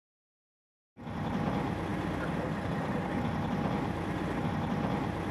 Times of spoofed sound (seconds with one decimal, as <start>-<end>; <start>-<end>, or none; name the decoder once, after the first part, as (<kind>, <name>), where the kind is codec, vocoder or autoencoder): none